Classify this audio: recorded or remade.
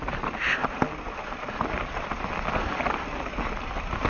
recorded